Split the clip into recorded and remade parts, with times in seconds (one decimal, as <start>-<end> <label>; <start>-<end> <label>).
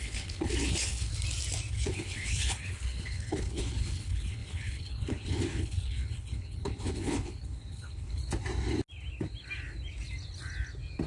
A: 0.0-1.1 remade; 1.1-1.7 recorded; 1.7-8.2 remade; 8.2-11.1 recorded